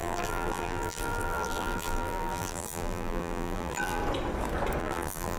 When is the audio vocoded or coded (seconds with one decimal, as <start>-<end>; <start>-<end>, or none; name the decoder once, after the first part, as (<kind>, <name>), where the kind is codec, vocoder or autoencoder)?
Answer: 0.0-4.0 (vocoder, BigVGAN v2); 4.8-5.4